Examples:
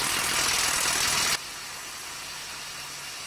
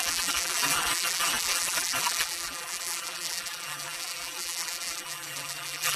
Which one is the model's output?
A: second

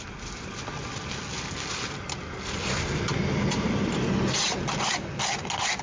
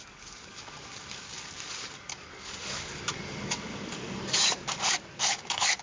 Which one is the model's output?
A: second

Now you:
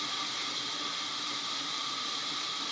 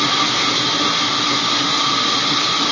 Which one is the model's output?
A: first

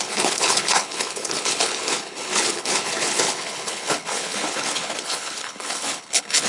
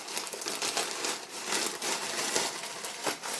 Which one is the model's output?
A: first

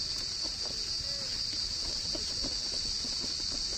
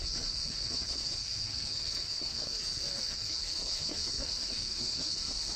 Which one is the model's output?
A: second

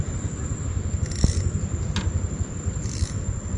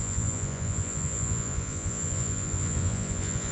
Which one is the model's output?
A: second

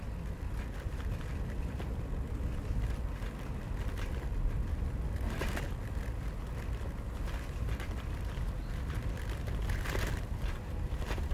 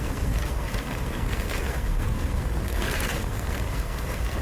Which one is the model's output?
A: second